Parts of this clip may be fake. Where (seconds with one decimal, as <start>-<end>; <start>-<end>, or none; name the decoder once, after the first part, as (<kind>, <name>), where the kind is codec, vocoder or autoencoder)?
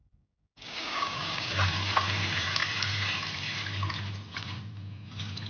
0.0-1.5 (codec, DAC)